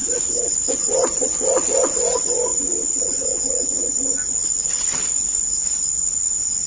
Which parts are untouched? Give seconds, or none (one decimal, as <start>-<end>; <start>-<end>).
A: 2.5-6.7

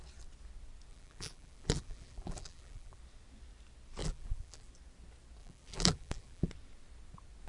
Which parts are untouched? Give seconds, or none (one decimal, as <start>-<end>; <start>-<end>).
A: 0.0-0.9; 3.0-4.0; 4.7-5.4; 6.5-7.5

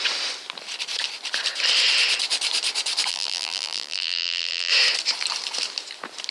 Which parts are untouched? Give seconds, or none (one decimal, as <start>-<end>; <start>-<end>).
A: 0.0-3.1; 4.7-6.3

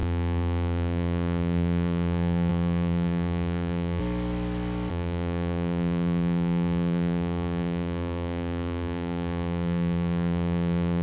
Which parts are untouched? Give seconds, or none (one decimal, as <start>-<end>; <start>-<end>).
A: 4.0-4.9